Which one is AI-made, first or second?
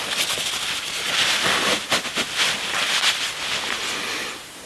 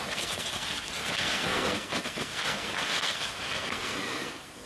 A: second